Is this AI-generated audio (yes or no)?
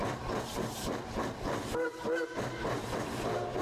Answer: no